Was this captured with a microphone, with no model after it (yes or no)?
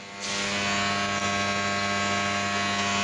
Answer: yes